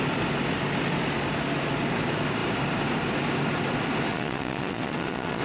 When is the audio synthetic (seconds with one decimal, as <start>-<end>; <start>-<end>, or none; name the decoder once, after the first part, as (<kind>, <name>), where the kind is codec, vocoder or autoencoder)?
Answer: 4.1-5.4 (vocoder, Vocos)